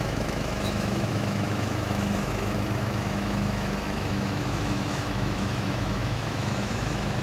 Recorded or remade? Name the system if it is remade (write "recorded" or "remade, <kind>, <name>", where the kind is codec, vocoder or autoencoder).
remade, autoencoder, DAC-VAE